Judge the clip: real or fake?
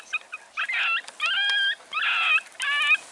real